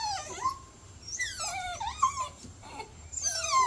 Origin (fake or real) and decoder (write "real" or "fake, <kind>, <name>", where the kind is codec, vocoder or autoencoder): fake, vocoder, BigVGAN v2